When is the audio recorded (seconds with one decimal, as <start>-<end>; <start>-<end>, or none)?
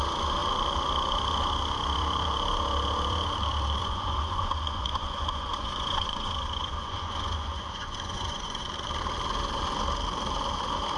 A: 0.0-3.8; 8.7-11.0